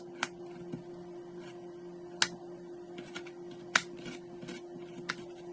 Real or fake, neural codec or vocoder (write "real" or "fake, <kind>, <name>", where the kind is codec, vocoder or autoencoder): real